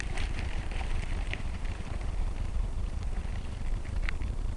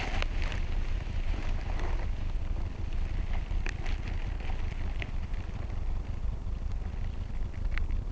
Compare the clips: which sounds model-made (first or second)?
first